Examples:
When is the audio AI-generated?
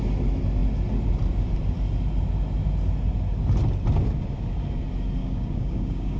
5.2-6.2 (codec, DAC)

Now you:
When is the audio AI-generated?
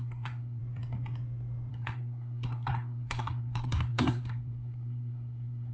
0.0-0.6 (codec, SNAC); 1.7-5.7